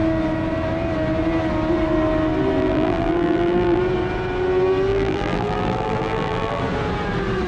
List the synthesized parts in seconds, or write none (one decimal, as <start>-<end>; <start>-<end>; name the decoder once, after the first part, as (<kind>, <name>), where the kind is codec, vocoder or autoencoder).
2.6-3.8 (vocoder, BigVGAN v2); 4.9-6.6